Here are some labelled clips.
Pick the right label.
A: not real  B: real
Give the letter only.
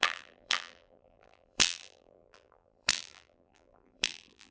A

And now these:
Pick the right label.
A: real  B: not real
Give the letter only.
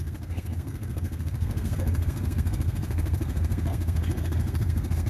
B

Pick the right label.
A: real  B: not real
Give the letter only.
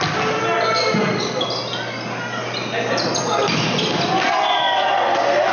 A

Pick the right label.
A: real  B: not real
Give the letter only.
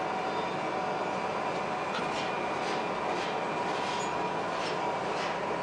A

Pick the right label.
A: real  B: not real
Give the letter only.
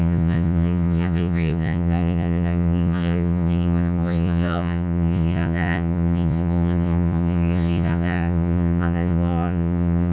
B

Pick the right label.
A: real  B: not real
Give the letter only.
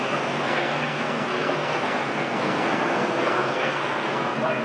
B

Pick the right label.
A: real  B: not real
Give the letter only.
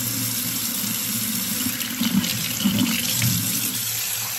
A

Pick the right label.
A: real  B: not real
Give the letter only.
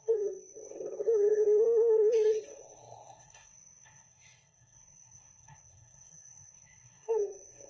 B